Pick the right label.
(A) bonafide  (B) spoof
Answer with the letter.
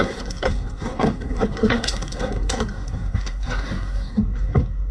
B